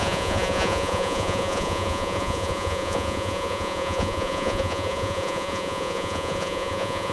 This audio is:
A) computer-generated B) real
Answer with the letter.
A